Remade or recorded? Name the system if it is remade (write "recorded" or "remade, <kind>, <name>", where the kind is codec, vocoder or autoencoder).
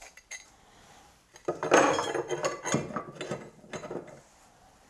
recorded